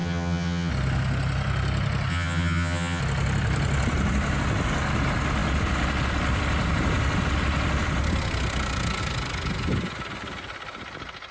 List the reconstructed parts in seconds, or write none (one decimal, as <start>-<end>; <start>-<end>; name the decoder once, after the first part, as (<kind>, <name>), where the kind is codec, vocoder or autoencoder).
0.0-0.7 (vocoder, HiFi-GAN); 2.1-3.0